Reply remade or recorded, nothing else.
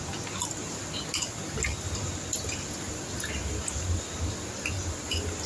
recorded